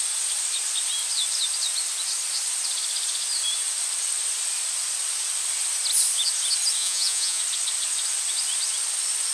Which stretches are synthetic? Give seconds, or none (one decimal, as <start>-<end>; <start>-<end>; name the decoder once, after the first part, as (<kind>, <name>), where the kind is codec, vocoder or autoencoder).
6.8-7.4 (vocoder, Vocos)